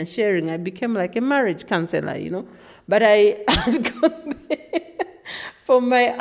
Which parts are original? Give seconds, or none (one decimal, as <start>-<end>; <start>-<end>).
0.0-6.2